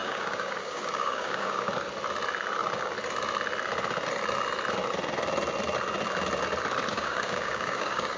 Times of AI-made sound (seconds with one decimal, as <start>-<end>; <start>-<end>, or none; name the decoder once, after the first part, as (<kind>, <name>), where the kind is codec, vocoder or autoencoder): 0.0-1.7 (codec, DAC); 6.9-8.2